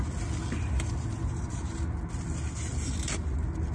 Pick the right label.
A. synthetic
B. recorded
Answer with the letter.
B